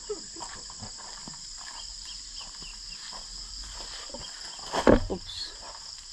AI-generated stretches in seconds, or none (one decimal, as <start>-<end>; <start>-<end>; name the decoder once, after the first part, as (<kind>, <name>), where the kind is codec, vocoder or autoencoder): 0.0-2.7 (vocoder, BigVGAN v2); 3.5-4.2; 4.8-6.1